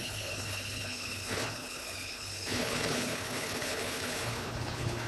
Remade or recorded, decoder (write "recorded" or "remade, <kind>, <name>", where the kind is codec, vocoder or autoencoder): remade, codec, HILCodec